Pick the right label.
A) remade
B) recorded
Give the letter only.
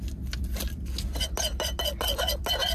B